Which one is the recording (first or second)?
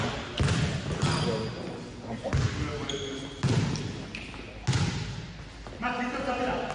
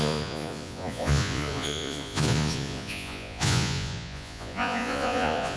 first